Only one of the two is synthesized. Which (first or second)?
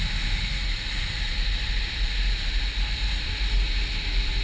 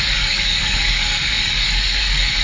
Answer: second